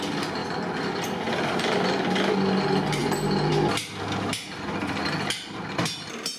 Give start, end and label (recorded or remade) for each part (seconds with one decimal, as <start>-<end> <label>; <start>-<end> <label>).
0.0-6.4 recorded